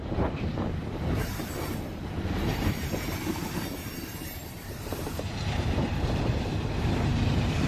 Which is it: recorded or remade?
remade